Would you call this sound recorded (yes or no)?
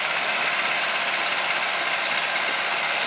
yes